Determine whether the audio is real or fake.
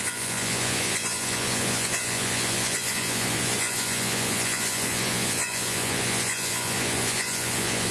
fake